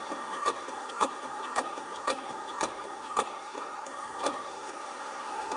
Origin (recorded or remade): remade